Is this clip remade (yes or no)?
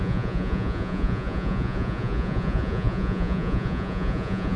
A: yes